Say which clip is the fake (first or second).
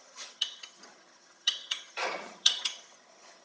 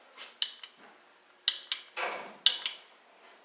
first